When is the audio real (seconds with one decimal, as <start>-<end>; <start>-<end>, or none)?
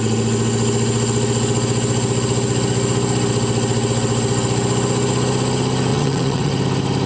0.0-5.9; 6.5-7.1